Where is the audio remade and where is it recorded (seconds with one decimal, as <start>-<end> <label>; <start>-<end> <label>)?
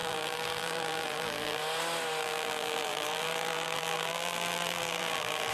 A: 0.0-1.6 remade; 1.6-2.2 recorded; 2.2-5.5 remade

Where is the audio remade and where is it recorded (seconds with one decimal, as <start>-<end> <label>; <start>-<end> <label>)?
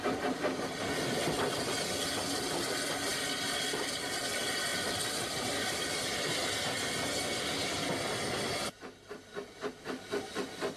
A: 0.0-3.1 recorded; 3.1-3.9 remade; 3.9-4.7 recorded; 4.7-6.0 remade; 6.0-10.8 recorded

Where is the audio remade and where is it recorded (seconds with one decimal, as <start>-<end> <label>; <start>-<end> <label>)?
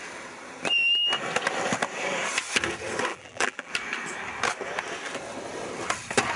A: 0.0-3.1 recorded; 3.1-3.7 remade; 3.7-6.4 recorded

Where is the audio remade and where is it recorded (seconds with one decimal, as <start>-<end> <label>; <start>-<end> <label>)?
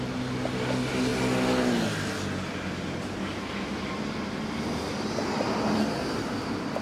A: 0.0-6.8 recorded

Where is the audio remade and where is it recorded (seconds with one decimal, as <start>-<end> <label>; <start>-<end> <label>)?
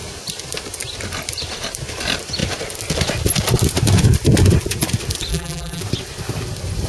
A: 0.0-5.3 recorded; 5.3-5.8 remade; 5.8-6.9 recorded